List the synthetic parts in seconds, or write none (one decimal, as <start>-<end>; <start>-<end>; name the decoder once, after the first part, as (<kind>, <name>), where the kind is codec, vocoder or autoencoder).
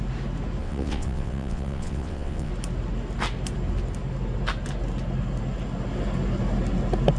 0.6-2.5 (vocoder, WaveNeXt)